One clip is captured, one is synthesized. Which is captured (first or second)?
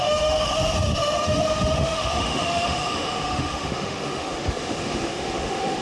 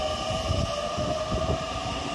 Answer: second